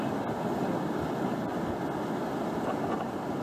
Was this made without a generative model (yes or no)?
yes